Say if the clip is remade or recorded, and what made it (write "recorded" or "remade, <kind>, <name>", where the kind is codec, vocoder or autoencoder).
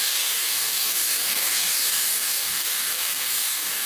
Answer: remade, codec, DAC